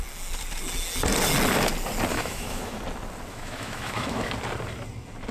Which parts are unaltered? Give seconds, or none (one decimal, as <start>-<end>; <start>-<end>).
0.0-2.1; 2.8-3.3; 4.3-5.3